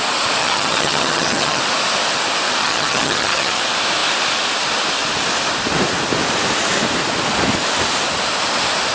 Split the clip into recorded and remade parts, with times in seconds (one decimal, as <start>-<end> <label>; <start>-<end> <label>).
0.0-0.4 recorded; 0.4-1.6 remade; 1.6-2.6 recorded; 2.6-3.6 remade; 3.6-8.9 recorded